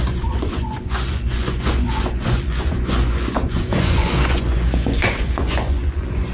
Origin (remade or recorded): remade